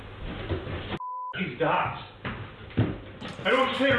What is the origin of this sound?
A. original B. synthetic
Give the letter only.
A